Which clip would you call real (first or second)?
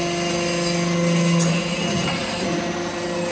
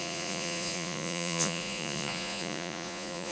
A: first